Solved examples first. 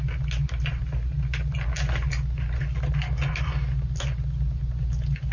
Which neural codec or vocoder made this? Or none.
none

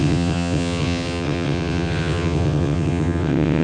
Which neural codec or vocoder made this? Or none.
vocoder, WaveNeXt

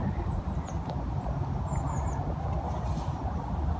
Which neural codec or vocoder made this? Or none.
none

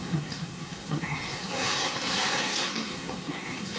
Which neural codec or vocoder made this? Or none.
codec, SNAC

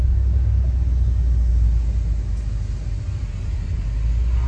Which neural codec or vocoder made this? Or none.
none